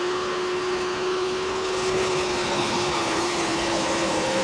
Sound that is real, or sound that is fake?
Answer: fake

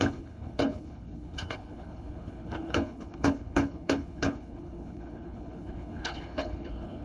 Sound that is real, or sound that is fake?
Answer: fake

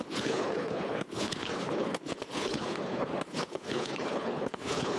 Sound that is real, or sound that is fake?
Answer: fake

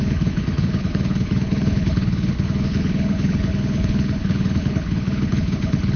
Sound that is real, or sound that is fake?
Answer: fake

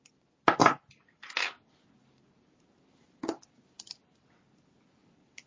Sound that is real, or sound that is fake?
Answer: real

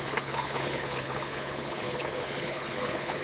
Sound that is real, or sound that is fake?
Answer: fake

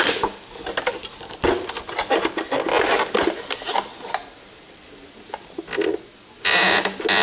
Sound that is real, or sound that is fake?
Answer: real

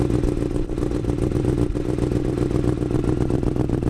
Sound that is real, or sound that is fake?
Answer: real